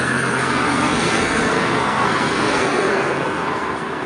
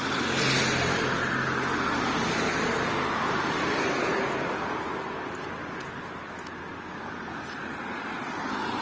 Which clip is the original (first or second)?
second